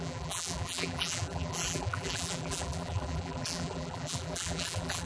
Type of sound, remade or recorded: remade